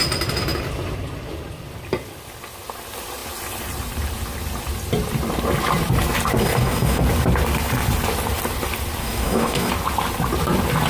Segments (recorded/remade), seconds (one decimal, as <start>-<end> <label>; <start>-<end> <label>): 0.0-6.4 recorded; 6.4-7.0 remade; 7.0-9.0 recorded; 9.0-9.7 remade; 9.7-10.9 recorded